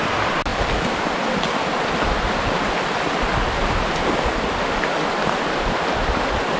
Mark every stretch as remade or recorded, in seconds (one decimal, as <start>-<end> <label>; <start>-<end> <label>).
0.0-6.6 recorded